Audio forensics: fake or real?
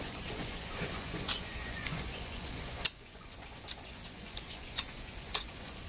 fake